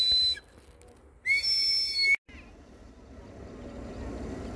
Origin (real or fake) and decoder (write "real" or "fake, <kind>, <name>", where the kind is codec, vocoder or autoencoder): real